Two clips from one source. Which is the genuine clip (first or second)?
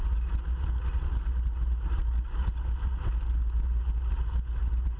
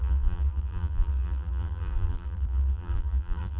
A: first